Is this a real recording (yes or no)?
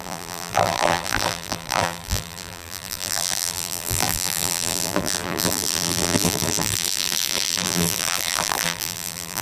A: no